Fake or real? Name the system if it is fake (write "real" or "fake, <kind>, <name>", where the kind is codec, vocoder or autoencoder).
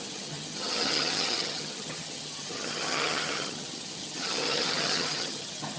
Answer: fake, vocoder, HiFi-GAN